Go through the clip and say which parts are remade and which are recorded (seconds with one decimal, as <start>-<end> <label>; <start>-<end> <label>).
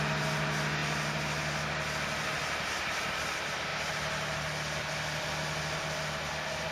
0.0-6.7 recorded